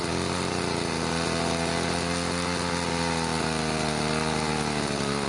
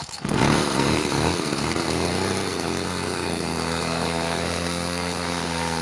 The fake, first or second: second